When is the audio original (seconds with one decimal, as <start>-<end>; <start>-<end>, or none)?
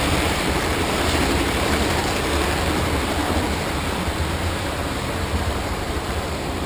2.0-4.4